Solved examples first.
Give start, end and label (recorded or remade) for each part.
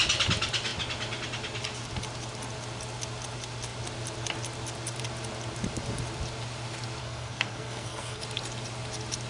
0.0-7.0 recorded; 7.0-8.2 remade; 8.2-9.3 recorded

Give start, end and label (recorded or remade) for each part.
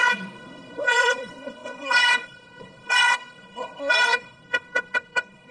0.0-5.5 remade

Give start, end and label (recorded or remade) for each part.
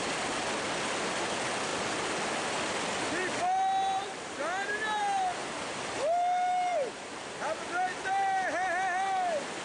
0.0-9.6 recorded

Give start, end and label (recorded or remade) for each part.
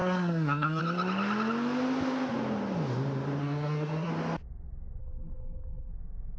0.0-0.8 remade; 0.8-3.4 recorded; 3.4-4.1 remade; 4.1-5.0 recorded; 5.0-5.9 remade; 5.9-6.4 recorded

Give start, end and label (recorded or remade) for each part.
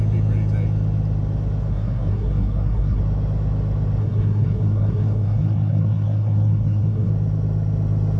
0.0-1.7 recorded; 1.7-3.0 remade; 3.0-4.0 recorded; 4.0-7.1 remade; 7.1-8.2 recorded